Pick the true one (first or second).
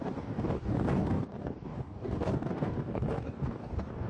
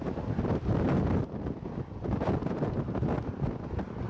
second